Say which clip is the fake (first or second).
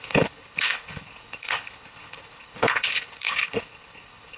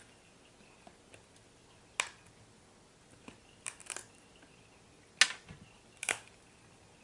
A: first